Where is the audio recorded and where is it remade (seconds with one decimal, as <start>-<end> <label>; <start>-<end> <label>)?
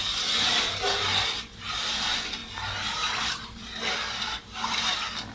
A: 0.0-5.3 recorded